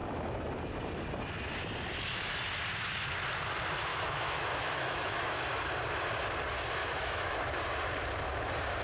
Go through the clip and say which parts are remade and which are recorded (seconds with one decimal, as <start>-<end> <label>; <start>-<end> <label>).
0.0-0.5 remade; 0.5-3.9 recorded; 3.9-5.4 remade; 5.4-6.8 recorded; 6.8-7.5 remade; 7.5-8.8 recorded